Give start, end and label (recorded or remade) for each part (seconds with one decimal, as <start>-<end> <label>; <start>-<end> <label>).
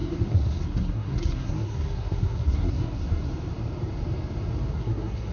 0.0-3.3 remade; 3.3-4.7 recorded; 4.7-5.3 remade